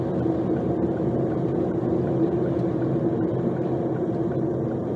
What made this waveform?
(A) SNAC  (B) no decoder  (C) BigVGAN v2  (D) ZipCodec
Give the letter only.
B